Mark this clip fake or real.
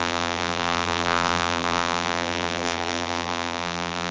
fake